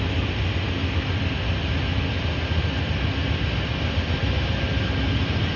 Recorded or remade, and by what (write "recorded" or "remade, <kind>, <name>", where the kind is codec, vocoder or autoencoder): recorded